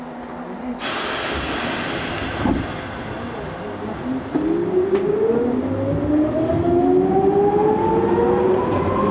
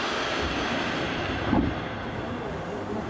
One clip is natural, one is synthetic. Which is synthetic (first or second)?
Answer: second